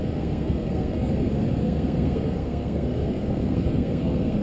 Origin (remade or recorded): remade